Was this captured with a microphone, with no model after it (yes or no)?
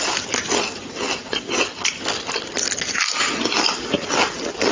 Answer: yes